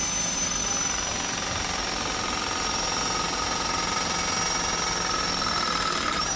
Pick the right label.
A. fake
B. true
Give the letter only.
B